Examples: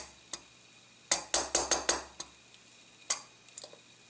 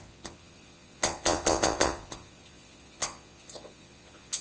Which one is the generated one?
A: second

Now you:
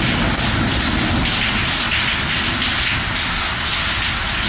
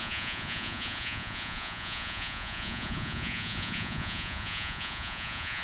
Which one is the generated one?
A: second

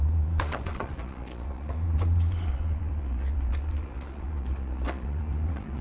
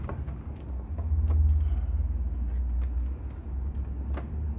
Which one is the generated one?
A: first